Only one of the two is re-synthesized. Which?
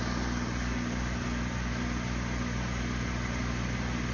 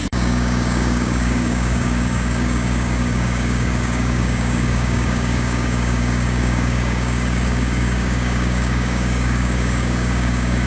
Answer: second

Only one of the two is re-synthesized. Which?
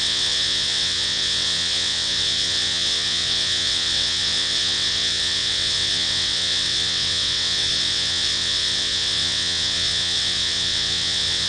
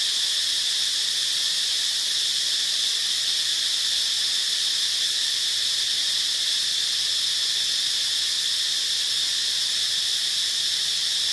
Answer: first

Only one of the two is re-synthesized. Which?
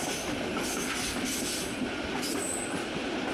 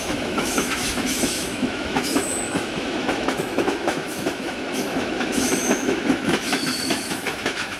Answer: second